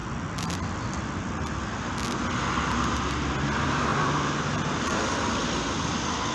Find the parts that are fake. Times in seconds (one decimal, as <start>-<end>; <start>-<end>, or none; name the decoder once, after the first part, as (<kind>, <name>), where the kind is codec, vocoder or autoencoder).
0.0-0.9 (vocoder, BigVGAN v2); 3.9-5.2